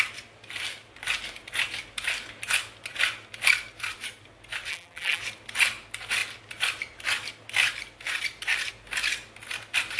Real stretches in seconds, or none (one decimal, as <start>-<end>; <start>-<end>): 0.0-4.7; 5.2-10.0